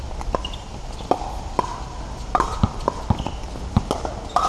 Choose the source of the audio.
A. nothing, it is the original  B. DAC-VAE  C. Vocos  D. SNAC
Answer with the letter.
A